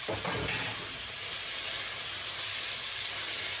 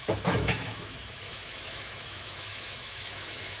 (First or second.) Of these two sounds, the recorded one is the first